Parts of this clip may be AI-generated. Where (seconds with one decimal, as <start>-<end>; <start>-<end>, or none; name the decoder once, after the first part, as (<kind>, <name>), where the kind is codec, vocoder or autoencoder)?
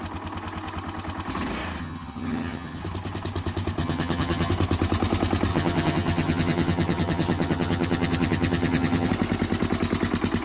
1.8-2.8 (vocoder, HiFi-GAN); 3.8-4.5; 5.5-9.1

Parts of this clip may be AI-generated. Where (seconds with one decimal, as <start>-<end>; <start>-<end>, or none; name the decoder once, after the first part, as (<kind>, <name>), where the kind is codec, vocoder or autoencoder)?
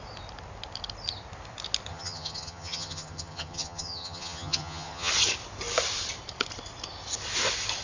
1.9-5.1 (vocoder, HiFi-GAN)